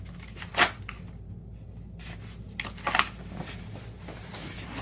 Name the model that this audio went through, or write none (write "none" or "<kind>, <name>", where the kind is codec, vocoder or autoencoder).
none